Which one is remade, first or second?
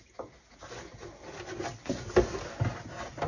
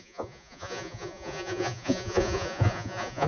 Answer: second